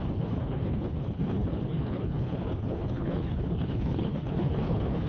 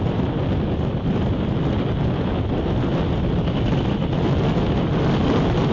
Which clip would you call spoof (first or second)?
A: first